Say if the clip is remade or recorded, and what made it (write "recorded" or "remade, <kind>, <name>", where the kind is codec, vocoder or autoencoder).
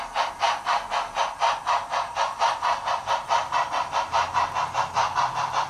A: recorded